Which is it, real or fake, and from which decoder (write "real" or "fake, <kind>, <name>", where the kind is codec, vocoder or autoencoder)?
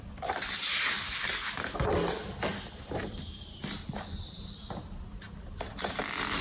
real